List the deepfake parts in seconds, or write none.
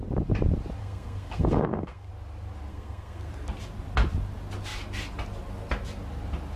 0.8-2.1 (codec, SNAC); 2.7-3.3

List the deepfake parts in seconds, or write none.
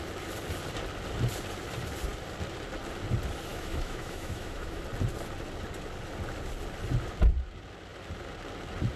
3.5-4.8 (autoencoder, DAC-VAE)